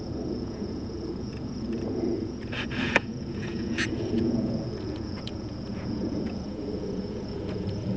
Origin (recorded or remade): remade